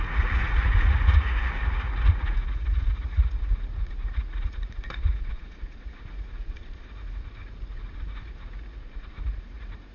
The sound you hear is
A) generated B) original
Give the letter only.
A